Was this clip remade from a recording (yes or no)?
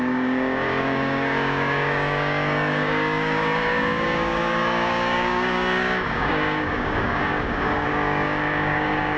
yes